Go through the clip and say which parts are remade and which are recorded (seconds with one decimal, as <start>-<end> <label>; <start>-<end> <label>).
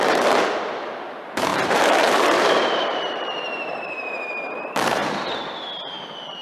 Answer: 0.0-5.0 remade; 5.0-6.4 recorded